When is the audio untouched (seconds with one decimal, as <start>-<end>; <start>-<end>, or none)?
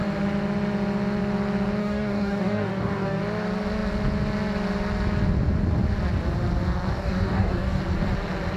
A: 0.0-1.8; 3.2-6.9; 7.8-8.6